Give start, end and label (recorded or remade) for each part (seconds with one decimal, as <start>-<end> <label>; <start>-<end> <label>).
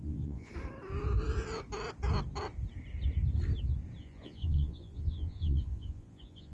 0.0-0.5 remade; 0.5-4.0 recorded; 4.0-6.5 remade